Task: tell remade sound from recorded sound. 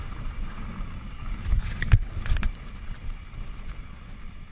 recorded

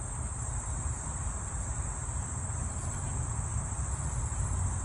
recorded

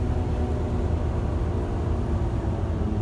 recorded